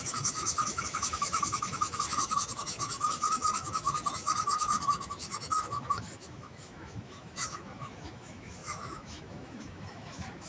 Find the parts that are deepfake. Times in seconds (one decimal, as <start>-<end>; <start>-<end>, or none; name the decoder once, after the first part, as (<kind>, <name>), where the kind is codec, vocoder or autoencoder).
0.0-10.5 (autoencoder, DAC-VAE)

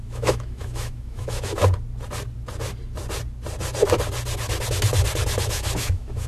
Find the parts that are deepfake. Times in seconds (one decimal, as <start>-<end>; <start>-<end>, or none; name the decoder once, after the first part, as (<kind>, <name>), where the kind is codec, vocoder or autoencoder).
0.0-1.6 (autoencoder, DAC-VAE); 5.4-6.3

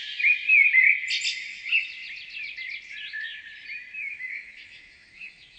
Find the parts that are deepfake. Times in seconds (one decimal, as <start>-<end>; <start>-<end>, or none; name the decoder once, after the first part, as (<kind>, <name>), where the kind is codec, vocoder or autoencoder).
4.0-5.6 (autoencoder, DAC-VAE)

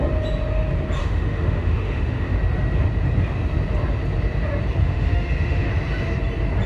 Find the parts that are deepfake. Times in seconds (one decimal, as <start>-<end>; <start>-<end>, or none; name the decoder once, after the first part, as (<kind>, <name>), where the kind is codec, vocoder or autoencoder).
1.0-2.4 (autoencoder, DAC-VAE); 4.8-5.7

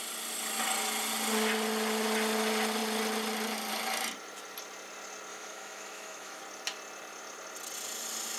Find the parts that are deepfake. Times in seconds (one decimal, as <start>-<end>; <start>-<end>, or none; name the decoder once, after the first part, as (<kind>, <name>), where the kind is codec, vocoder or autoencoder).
5.3-6.4 (autoencoder, DAC-VAE)

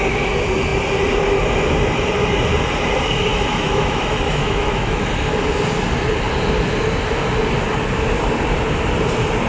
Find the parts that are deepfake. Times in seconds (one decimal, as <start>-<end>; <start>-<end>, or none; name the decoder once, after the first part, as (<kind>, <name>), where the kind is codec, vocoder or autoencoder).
3.3-5.1 (autoencoder, DAC-VAE)